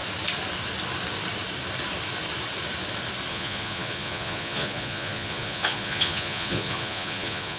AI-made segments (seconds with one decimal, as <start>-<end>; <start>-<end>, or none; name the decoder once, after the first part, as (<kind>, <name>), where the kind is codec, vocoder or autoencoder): 3.3-7.6 (vocoder, Vocos)